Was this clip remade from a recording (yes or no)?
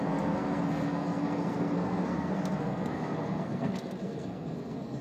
yes